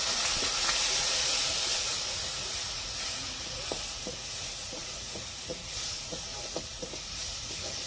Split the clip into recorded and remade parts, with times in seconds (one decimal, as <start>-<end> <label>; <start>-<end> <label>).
0.0-7.9 remade